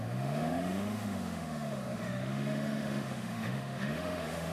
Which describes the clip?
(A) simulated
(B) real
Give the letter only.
A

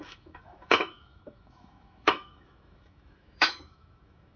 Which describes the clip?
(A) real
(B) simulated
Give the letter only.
B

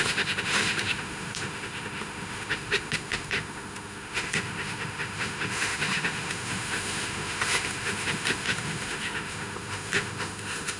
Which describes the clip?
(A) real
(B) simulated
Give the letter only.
B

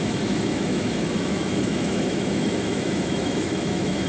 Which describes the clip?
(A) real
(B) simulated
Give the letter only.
B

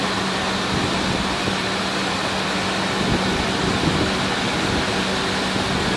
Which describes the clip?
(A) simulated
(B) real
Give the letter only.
B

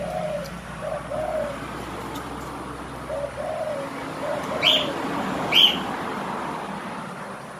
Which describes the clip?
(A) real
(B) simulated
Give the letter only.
A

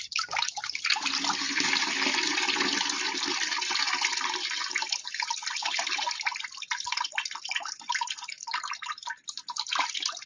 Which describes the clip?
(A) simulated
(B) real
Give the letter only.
B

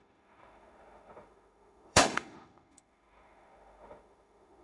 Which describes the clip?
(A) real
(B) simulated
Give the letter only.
B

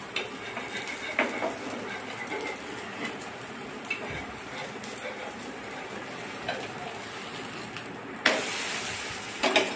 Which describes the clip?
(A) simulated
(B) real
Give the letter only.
B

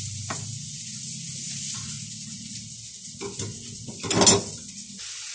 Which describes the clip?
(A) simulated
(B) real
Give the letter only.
B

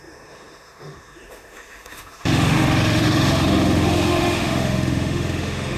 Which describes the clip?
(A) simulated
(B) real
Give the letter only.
A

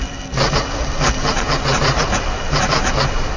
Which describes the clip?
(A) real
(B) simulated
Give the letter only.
A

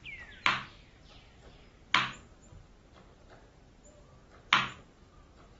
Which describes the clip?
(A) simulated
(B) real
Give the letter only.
B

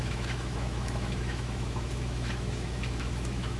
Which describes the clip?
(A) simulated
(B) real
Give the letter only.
A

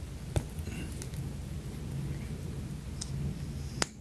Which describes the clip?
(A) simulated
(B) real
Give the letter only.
B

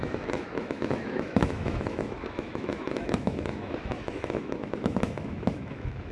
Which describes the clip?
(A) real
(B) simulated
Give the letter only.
B